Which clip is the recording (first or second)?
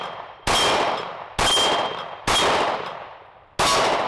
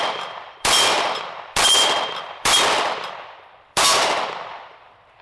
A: first